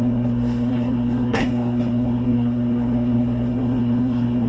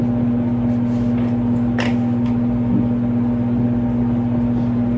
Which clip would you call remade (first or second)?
first